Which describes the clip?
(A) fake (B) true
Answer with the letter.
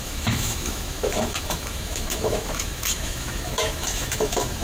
A